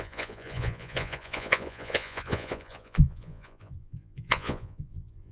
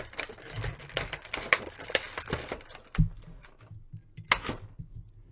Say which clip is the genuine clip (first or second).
second